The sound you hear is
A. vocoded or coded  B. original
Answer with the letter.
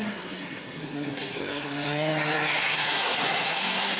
A